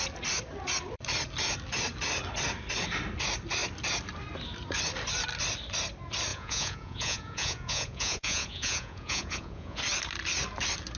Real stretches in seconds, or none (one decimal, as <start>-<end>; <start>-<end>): 0.0-6.3; 9.8-11.0